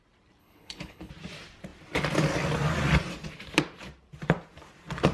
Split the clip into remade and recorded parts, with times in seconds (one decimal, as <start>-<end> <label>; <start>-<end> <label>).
0.0-0.4 recorded; 0.4-1.1 remade; 1.1-5.1 recorded